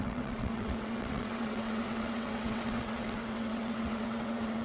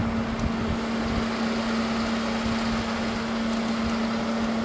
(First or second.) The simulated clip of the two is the first